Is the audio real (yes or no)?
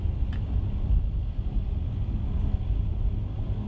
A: yes